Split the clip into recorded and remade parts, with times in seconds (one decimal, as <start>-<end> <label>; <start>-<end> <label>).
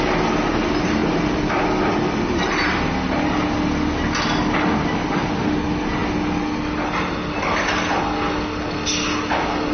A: 0.0-9.7 recorded